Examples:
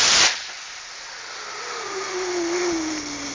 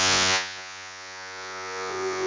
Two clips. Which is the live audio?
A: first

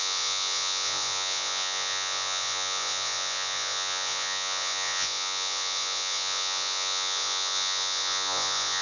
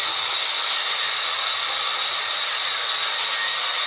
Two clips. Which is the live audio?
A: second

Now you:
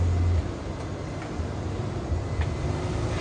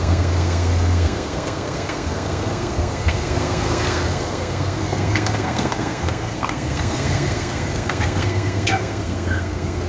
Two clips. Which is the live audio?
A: first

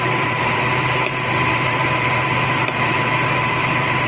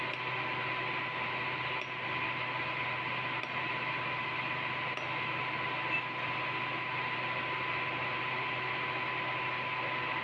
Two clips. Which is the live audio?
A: second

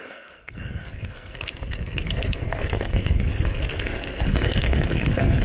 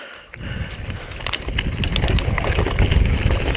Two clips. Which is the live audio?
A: second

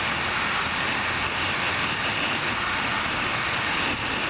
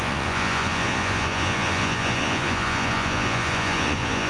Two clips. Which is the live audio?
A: first